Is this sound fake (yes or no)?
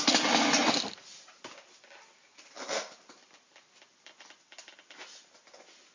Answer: no